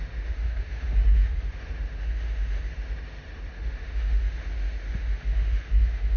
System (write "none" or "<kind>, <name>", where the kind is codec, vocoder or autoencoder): autoencoder, DAC-VAE